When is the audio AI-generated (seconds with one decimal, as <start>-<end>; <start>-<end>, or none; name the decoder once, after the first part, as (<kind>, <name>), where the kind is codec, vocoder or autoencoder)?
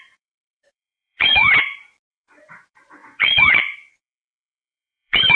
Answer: 0.0-1.5 (vocoder, Vocos); 2.1-5.4